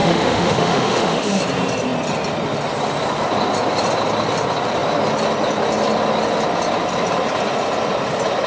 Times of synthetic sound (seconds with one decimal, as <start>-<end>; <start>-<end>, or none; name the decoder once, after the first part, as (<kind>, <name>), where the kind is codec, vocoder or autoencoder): 0.0-1.4 (autoencoder, DAC-VAE)